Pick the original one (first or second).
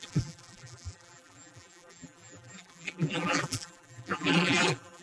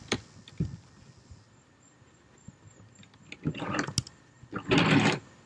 second